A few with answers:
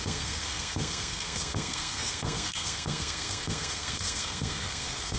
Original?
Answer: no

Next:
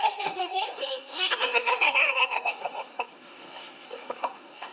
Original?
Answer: no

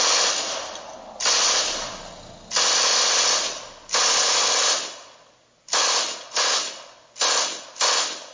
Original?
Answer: yes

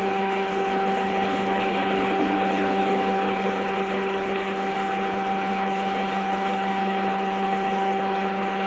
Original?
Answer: no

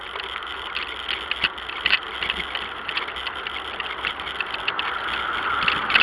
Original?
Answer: yes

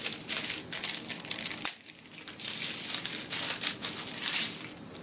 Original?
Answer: yes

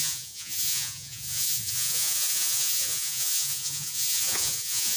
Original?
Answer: no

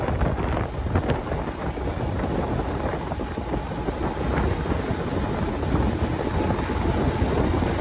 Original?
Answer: yes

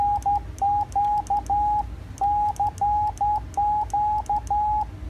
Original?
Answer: yes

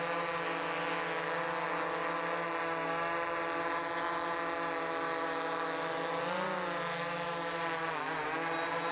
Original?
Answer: yes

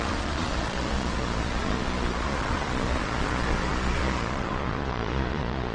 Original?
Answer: no